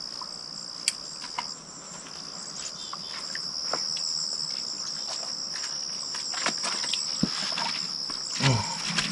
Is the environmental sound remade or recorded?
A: recorded